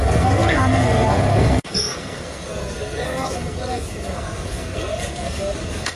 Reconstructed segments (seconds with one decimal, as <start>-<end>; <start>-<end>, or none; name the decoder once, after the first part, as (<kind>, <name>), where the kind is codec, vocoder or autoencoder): 0.0-6.0 (codec, SNAC)